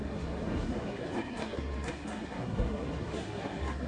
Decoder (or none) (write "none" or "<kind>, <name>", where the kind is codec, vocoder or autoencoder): codec, SNAC